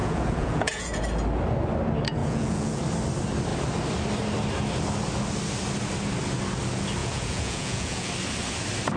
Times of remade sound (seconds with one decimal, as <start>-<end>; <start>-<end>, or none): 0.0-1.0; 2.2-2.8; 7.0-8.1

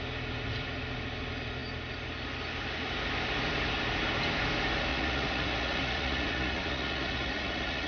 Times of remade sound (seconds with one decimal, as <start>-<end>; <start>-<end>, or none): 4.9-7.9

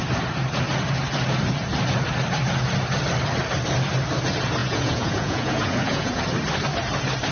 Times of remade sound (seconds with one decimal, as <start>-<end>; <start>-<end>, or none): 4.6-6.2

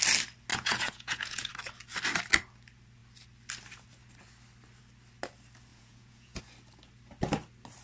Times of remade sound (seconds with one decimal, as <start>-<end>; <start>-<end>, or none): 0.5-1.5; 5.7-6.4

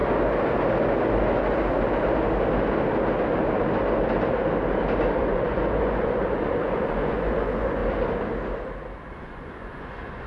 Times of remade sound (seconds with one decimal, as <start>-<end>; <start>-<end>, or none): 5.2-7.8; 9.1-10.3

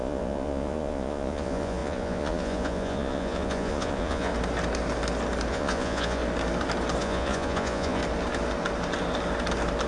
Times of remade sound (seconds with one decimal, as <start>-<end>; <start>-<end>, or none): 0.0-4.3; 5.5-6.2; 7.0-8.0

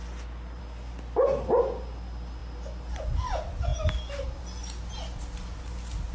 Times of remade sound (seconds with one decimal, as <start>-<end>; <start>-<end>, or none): none

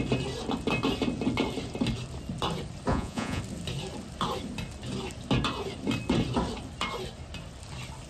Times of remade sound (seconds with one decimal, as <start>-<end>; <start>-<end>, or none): 2.9-3.4